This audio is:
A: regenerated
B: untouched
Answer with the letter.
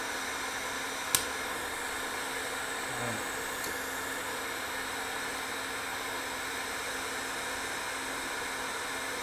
B